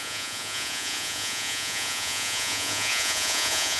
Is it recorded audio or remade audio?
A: remade